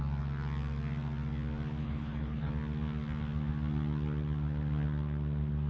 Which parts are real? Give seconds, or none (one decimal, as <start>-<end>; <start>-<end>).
0.0-1.8; 2.5-5.7